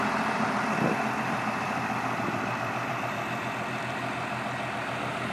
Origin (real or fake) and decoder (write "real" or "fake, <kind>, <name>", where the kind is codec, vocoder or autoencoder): fake, vocoder, BigVGAN v2